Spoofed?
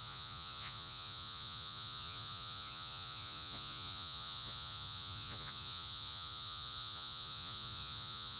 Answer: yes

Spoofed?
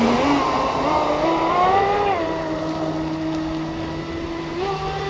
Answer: no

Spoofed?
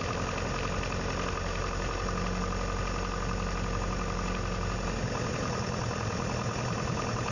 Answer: no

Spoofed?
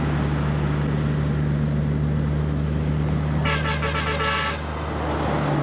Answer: no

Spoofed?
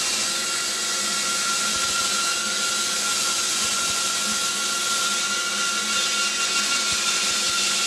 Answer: yes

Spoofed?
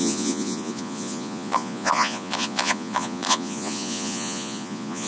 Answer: yes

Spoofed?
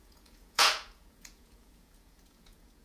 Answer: yes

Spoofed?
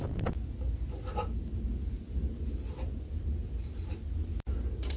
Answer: no